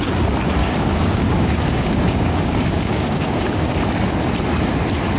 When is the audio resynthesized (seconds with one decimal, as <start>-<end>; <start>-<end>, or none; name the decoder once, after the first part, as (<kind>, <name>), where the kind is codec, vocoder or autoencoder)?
0.6-3.7 (codec, DAC)